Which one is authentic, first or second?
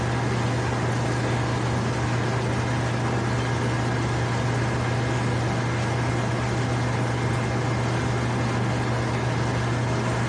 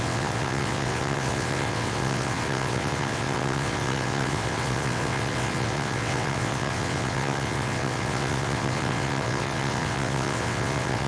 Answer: first